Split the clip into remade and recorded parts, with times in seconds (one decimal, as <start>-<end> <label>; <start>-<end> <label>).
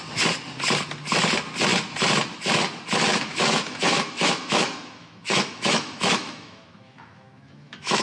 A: 0.0-3.1 recorded; 3.1-8.0 remade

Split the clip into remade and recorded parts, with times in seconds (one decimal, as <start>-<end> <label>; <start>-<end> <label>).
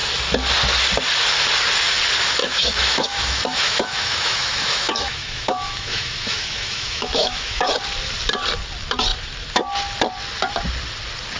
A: 0.0-2.4 recorded; 2.4-7.7 remade; 7.7-11.4 recorded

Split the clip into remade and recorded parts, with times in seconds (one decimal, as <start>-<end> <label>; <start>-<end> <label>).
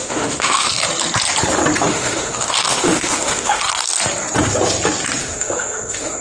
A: 0.0-0.7 remade; 0.7-1.9 recorded; 1.9-3.6 remade; 3.6-5.2 recorded; 5.2-6.2 remade